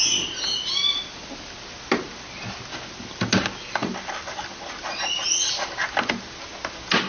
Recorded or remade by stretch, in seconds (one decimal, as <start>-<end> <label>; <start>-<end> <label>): 0.0-7.1 recorded

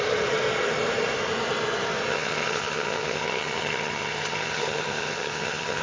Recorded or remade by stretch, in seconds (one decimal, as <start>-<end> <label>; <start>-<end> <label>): 0.0-2.1 recorded; 2.1-5.8 remade

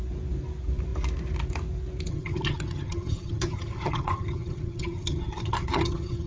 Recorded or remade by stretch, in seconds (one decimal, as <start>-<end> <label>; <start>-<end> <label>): 0.0-2.1 recorded; 2.1-6.3 remade

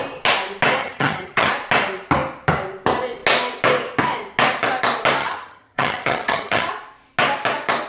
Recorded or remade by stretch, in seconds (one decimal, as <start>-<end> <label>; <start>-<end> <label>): 0.0-0.8 recorded; 0.8-1.5 remade; 1.5-5.2 recorded; 5.2-6.7 remade; 6.7-7.9 recorded